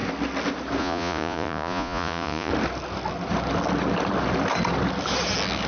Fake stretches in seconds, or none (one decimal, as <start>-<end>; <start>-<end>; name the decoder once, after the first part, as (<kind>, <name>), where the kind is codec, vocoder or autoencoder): 0.8-2.5 (vocoder, Vocos)

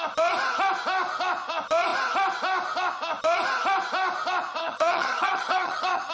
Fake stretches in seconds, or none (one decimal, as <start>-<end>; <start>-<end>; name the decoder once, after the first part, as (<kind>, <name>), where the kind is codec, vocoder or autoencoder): 4.6-6.1 (vocoder, HiFi-GAN)

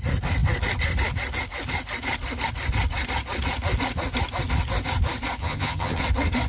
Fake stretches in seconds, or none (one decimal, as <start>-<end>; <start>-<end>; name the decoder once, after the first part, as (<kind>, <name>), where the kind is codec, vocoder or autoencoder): 5.4-6.0 (vocoder, HiFi-GAN)

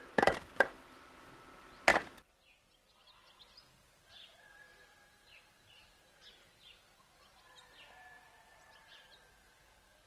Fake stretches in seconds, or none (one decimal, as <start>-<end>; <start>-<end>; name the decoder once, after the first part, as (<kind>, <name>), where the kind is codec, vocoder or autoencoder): none

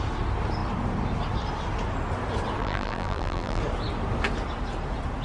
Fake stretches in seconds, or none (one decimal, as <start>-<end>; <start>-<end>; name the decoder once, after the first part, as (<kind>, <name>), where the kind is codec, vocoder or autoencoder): 2.6-3.6 (vocoder, BigVGAN v2)